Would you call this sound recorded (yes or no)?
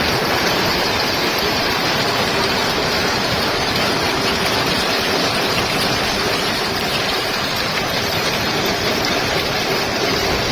no